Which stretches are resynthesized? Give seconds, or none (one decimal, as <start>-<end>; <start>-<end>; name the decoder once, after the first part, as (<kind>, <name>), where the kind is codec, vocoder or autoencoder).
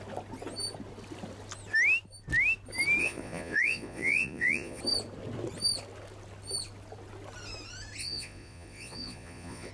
3.0-4.8 (vocoder, Vocos); 8.0-9.7